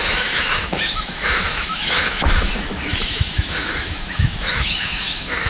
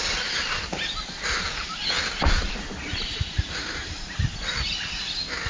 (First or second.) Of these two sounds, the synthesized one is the first